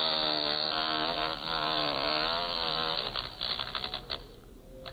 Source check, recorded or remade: recorded